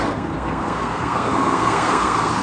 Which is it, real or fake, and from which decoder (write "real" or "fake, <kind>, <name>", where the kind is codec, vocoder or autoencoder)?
fake, codec, SNAC